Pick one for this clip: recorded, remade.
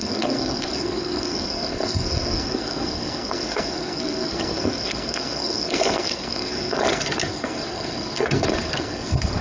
remade